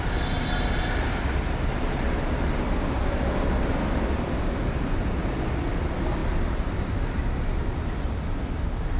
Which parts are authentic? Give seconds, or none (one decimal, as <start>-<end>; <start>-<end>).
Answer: 0.0-9.0